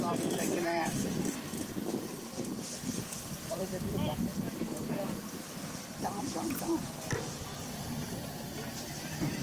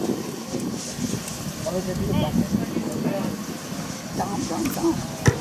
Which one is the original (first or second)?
second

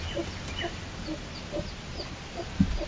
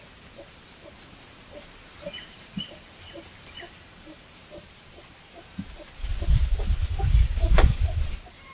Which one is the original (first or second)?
first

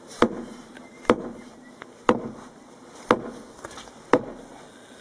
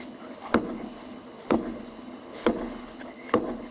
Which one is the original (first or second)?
first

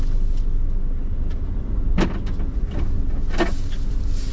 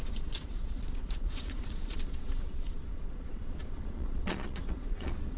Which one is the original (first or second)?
first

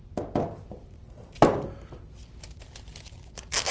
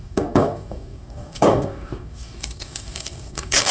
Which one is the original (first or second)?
first